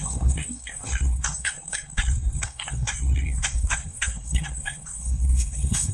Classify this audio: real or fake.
fake